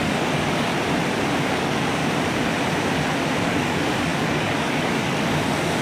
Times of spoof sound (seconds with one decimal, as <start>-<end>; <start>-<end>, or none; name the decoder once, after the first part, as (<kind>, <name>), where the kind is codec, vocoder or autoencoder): 0.0-0.7 (codec, DAC); 1.5-2.0; 3.4-5.8

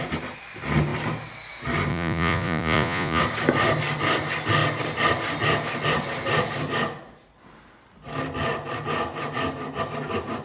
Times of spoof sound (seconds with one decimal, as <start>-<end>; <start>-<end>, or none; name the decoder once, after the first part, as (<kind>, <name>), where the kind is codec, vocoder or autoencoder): 1.9-3.2 (vocoder, Vocos)

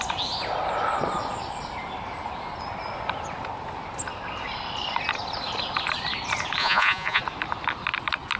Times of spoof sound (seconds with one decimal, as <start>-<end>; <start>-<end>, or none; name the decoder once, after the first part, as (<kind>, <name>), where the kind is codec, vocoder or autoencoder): 6.6-7.2 (vocoder, Vocos)

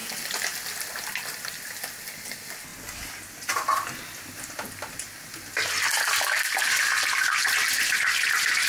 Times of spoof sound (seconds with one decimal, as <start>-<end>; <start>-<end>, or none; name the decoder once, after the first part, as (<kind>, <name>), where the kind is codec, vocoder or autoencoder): 0.9-2.7 (vocoder, BigVGAN v2); 3.3-8.7

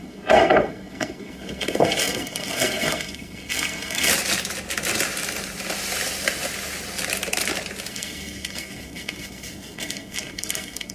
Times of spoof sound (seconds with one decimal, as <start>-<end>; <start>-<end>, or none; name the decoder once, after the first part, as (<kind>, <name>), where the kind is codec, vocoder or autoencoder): 0.0-4.1 (codec, SNAC); 7.9-10.9

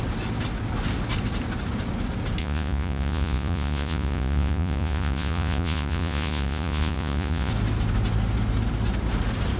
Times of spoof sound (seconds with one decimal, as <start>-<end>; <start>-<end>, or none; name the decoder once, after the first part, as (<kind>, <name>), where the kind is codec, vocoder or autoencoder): 2.4-7.5 (vocoder, Vocos)